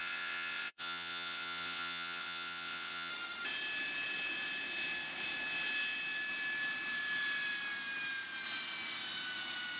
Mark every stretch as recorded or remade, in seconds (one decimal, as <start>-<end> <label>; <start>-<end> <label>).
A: 0.0-3.1 remade; 3.1-9.8 recorded